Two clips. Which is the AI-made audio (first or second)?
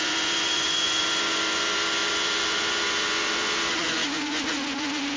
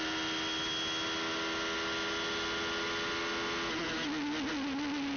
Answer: first